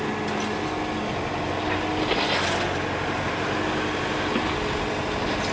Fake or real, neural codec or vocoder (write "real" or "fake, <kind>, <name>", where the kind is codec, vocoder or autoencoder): real